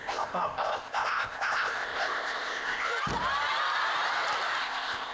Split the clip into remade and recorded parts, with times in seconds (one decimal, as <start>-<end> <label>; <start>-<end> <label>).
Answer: 0.0-2.9 remade; 2.9-4.6 recorded; 4.6-5.1 remade